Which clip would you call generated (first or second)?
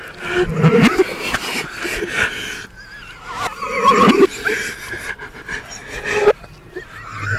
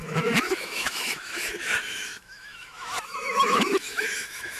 second